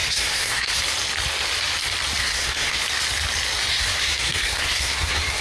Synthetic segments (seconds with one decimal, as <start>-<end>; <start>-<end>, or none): 0.0-0.8; 2.2-2.8; 3.7-5.4